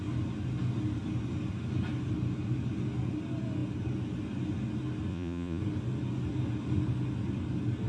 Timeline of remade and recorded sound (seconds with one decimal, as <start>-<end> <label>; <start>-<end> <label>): 0.0-5.1 recorded; 5.1-5.6 remade; 5.6-7.9 recorded